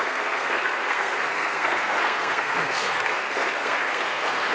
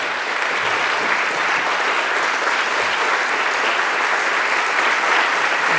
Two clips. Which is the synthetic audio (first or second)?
first